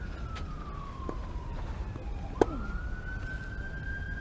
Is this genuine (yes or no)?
yes